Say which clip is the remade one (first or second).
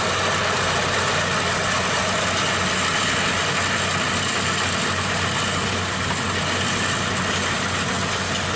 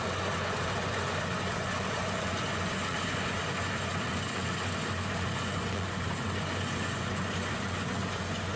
second